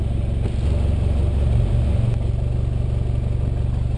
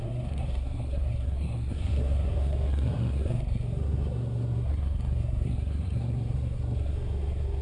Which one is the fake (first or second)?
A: second